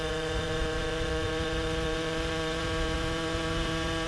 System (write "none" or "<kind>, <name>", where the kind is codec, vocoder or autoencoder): vocoder, Vocos